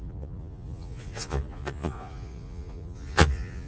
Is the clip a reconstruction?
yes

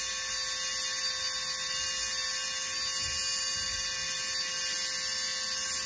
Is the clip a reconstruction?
no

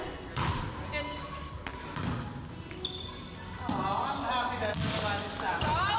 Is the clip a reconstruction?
no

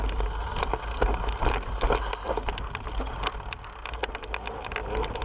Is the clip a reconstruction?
no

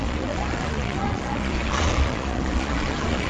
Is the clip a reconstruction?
yes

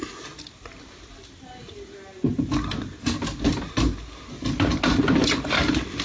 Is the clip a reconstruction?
no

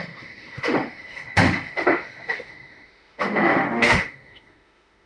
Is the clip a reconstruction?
yes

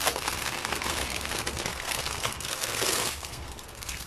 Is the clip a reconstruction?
yes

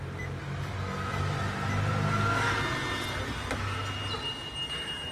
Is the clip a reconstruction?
no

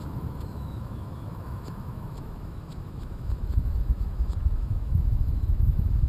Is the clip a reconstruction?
yes